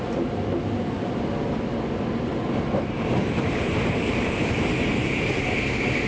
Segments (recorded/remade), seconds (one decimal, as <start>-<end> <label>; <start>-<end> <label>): 0.0-2.3 recorded; 2.3-4.6 remade; 4.6-6.1 recorded